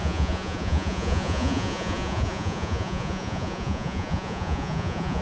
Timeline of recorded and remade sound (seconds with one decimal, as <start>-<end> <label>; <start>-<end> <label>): 0.0-5.2 remade